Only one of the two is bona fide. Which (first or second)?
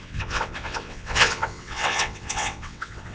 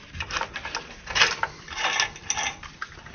second